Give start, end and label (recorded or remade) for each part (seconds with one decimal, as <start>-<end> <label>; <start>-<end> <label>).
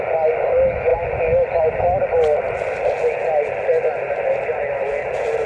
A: 0.0-5.5 recorded